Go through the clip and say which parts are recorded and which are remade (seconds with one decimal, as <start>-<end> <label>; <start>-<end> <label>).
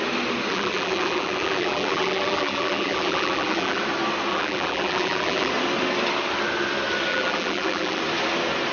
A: 0.0-0.5 recorded; 0.5-3.8 remade; 3.8-4.3 recorded; 4.3-5.5 remade; 5.5-7.1 recorded; 7.1-8.0 remade; 8.0-8.7 recorded